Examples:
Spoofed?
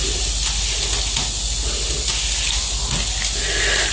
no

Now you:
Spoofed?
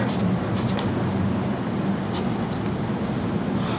no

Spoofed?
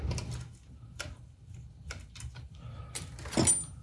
no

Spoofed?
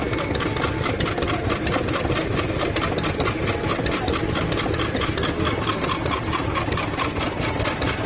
no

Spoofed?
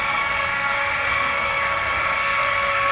yes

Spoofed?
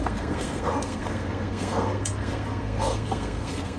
yes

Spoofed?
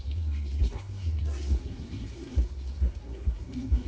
yes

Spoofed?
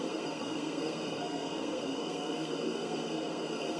yes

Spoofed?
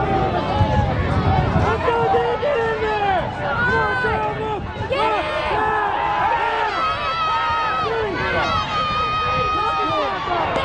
no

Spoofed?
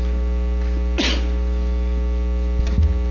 no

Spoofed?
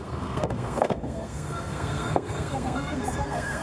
yes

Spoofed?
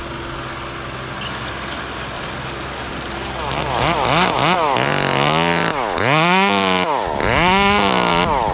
no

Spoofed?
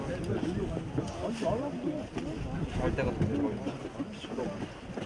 no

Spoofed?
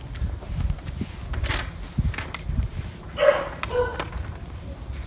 no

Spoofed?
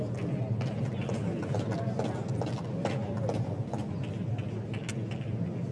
no